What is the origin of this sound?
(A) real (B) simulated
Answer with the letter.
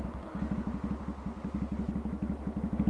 A